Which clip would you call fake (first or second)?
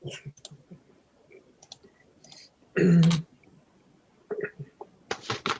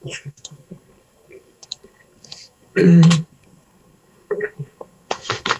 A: second